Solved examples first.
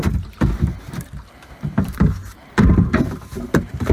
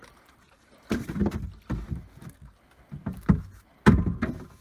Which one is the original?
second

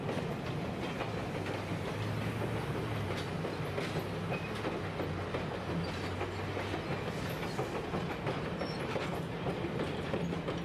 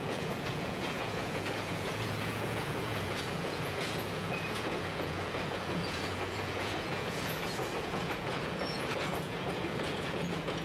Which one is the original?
first